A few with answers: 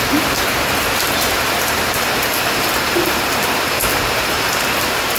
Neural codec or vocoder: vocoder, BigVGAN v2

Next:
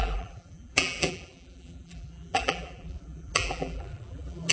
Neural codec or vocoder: vocoder, BigVGAN v2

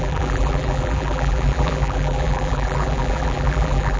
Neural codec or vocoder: vocoder, BigVGAN v2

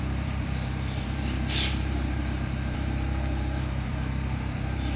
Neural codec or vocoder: vocoder, BigVGAN v2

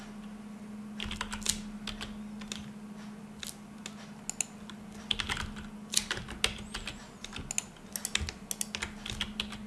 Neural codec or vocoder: none